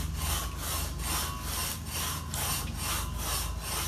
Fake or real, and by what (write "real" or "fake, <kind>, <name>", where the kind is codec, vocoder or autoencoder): real